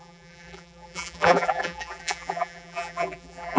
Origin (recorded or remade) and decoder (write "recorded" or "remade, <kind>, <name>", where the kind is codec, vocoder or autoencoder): remade, vocoder, BigVGAN v2